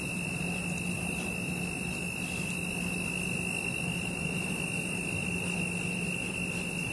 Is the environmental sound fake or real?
real